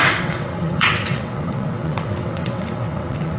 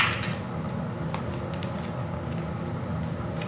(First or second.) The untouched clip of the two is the second